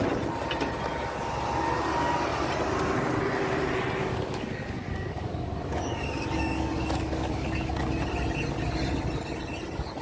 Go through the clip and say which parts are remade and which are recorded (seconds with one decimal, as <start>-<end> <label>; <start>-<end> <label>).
0.0-4.0 recorded; 4.0-7.9 remade; 7.9-10.0 recorded